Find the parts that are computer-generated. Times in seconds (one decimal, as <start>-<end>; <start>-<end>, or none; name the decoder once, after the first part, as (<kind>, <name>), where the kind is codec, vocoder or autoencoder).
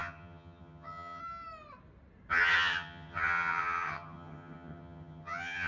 0.0-1.2 (vocoder, HiFi-GAN); 2.3-5.7